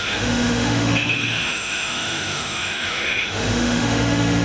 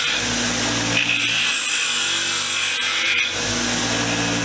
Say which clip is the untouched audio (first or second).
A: second